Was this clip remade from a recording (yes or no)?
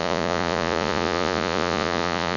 yes